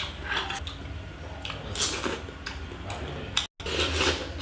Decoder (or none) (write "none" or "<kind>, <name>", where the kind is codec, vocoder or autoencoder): none